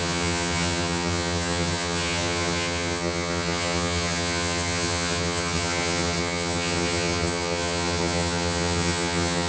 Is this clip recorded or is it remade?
remade